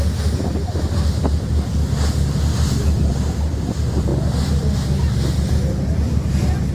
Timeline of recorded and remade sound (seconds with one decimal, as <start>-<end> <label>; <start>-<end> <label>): 0.0-6.7 recorded